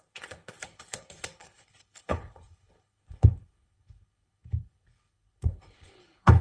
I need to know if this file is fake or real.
fake